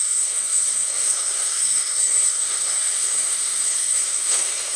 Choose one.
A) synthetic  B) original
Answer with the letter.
A